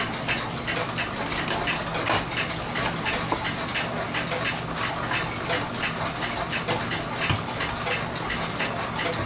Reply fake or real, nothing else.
real